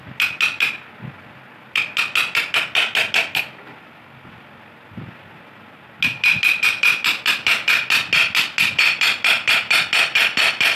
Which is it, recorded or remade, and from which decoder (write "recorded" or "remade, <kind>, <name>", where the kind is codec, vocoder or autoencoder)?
recorded